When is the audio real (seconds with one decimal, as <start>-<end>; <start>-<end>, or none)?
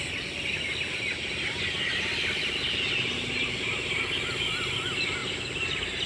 0.0-6.1